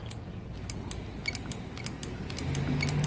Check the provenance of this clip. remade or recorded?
recorded